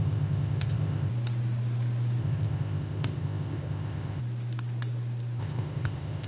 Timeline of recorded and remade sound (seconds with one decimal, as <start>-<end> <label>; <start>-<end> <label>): 0.0-1.1 remade; 1.1-2.2 recorded; 2.2-4.2 remade; 4.2-5.4 recorded; 5.4-6.3 remade